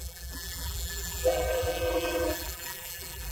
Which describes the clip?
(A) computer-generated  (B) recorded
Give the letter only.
A